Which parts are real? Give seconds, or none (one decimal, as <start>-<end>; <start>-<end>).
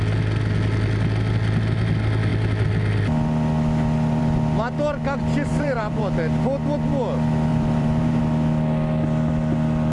0.0-5.5; 6.0-7.5; 8.2-9.9